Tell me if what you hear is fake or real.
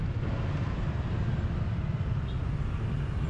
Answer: real